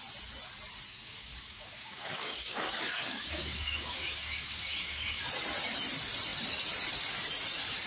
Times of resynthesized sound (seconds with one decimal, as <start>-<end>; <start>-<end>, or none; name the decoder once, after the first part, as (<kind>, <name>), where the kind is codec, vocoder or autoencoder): 0.9-5.2 (codec, DAC)